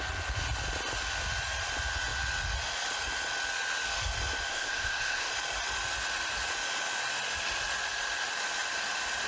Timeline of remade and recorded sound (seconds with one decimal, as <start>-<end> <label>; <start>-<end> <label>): 0.0-4.5 recorded; 4.5-5.3 remade; 5.3-9.3 recorded